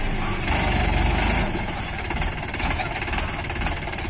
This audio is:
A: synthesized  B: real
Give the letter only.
B